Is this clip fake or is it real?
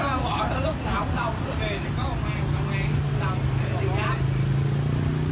real